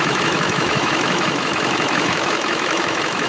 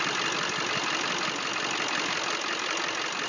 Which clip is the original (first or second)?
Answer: second